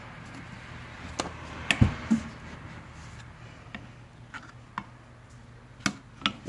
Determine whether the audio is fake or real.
real